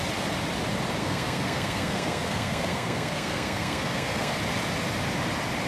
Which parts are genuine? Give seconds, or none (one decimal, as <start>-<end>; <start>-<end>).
0.0-1.0; 4.4-5.7